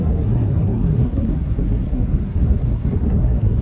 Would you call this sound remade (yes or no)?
yes